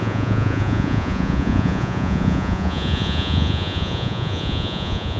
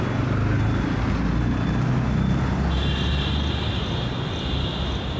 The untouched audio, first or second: second